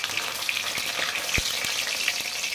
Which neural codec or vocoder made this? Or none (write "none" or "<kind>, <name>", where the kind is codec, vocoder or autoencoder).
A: none